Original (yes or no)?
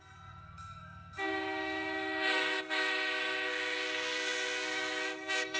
no